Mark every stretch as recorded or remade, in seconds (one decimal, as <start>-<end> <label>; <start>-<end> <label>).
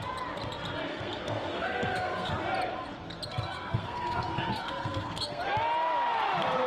0.0-0.9 recorded; 0.9-2.3 remade; 2.3-3.3 recorded; 3.3-5.4 remade; 5.4-6.7 recorded